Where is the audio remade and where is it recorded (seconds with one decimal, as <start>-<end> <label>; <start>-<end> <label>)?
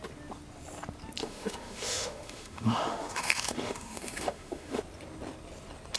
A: 0.0-1.2 recorded; 1.2-4.8 remade; 4.8-6.0 recorded